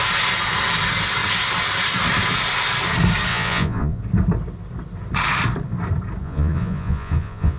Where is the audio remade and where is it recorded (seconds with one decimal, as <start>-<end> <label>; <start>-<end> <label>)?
0.0-3.3 recorded; 3.3-4.0 remade; 4.0-6.2 recorded; 6.2-7.6 remade